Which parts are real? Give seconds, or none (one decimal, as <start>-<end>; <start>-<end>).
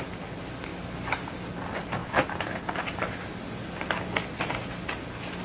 0.0-5.4